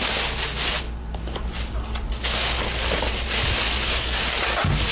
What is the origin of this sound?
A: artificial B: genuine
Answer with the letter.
B